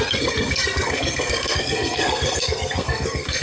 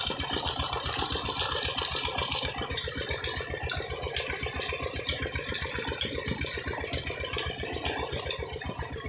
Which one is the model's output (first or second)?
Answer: first